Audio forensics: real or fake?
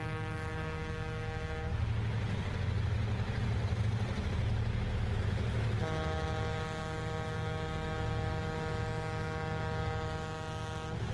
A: real